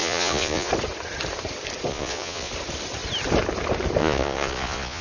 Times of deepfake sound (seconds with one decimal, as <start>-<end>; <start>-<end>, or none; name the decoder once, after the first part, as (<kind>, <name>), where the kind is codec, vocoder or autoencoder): 0.0-0.7 (vocoder, Vocos); 1.9-2.5; 4.0-5.0